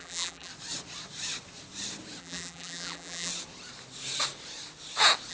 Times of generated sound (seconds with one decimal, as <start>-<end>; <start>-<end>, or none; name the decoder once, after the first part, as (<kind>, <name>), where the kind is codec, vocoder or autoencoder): 0.0-0.5 (vocoder, BigVGAN v2); 2.2-3.3